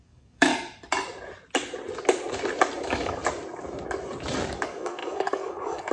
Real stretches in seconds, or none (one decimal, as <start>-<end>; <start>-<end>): 0.5-2.8; 3.2-4.6